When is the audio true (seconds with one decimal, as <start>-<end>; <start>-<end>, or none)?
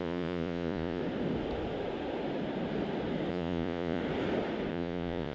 1.0-3.3; 4.0-4.7